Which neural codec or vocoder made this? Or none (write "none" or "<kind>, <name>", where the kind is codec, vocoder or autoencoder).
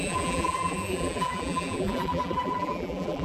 vocoder, BigVGAN v2